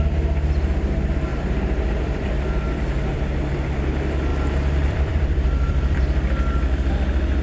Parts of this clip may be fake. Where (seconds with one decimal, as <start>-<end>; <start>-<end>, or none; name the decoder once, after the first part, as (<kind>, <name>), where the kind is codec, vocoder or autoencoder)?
1.3-3.5 (vocoder, BigVGAN v2); 4.3-6.0